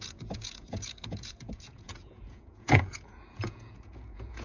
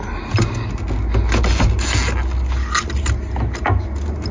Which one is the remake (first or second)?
first